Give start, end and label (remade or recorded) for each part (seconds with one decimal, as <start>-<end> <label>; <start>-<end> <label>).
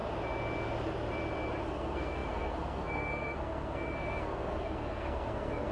0.0-1.7 recorded; 1.7-5.7 remade